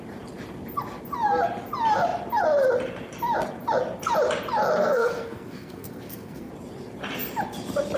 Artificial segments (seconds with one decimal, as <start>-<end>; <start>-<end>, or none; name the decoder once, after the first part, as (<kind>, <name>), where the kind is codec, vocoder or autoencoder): 4.8-6.5 (codec, SNAC)